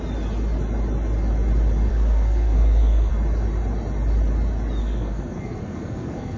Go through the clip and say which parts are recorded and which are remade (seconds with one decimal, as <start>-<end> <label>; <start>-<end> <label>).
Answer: 0.0-1.9 recorded; 1.9-3.1 remade; 3.1-4.8 recorded; 4.8-6.4 remade